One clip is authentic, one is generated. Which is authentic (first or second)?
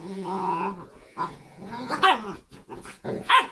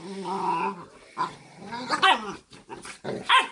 second